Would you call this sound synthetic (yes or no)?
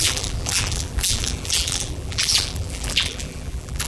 yes